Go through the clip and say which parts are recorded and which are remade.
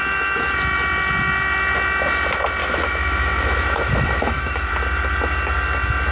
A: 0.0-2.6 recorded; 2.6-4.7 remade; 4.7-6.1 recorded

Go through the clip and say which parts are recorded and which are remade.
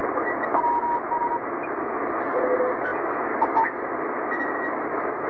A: 0.0-5.3 remade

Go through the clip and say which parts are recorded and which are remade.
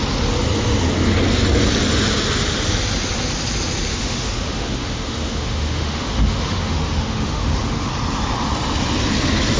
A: 0.0-3.9 recorded; 3.9-7.9 remade; 7.9-9.6 recorded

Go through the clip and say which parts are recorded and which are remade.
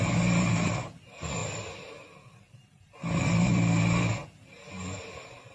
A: 0.0-5.5 recorded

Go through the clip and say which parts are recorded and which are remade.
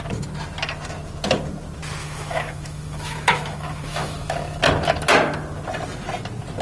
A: 0.0-2.0 recorded; 2.0-4.6 remade; 4.6-6.6 recorded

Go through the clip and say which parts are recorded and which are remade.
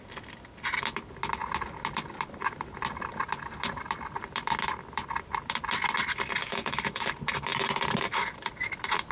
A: 0.0-6.4 recorded; 6.4-7.1 remade; 7.1-9.1 recorded